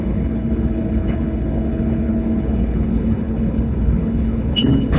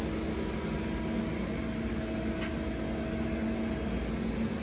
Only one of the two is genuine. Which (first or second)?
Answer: second